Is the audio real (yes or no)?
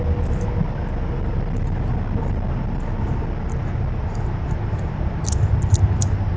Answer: yes